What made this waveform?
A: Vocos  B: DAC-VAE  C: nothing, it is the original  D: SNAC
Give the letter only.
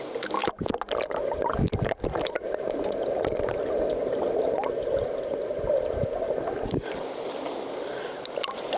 C